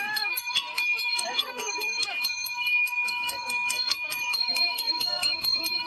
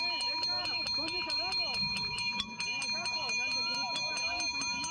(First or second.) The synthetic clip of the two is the first